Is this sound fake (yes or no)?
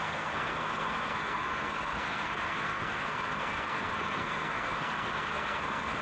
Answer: yes